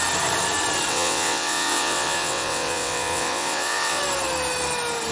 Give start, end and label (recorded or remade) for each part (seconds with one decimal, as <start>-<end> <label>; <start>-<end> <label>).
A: 0.0-0.9 recorded; 0.9-4.0 remade; 4.0-5.1 recorded